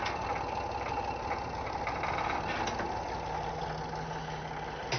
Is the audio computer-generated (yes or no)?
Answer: no